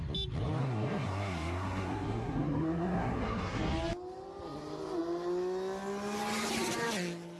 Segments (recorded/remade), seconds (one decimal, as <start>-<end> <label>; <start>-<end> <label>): 0.0-0.6 recorded; 0.6-3.6 remade; 3.6-7.4 recorded